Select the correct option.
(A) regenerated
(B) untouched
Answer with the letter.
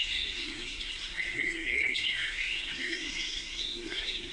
A